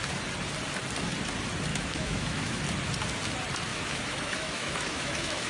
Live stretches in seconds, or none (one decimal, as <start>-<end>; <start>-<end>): 0.0-1.7; 2.6-3.7